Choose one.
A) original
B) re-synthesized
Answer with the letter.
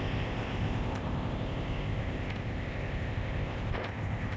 B